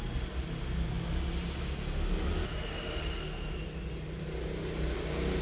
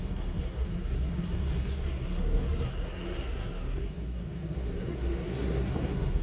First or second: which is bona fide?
first